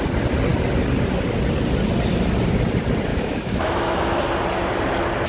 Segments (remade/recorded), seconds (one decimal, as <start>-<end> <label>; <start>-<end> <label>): 0.0-3.1 recorded; 3.1-4.2 remade; 4.2-5.3 recorded